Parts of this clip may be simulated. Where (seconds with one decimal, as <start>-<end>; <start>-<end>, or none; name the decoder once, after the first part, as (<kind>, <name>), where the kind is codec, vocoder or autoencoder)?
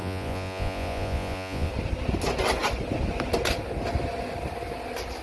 0.0-1.7 (vocoder, Vocos)